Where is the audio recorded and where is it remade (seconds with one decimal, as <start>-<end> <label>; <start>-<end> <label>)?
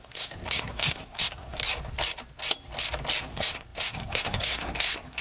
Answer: 0.0-1.6 remade; 1.6-3.2 recorded; 3.2-5.2 remade